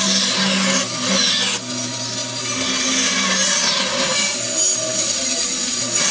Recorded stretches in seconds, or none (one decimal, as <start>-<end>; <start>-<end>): 0.0-6.1